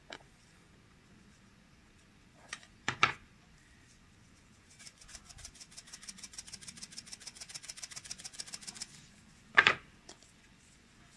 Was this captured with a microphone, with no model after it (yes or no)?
no